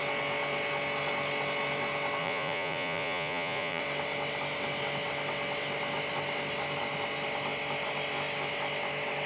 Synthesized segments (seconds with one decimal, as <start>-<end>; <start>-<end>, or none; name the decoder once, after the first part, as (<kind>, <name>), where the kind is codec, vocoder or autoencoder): 2.2-3.8 (vocoder, Vocos)